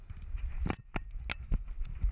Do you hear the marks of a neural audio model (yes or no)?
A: no